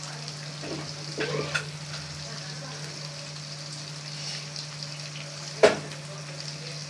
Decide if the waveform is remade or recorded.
recorded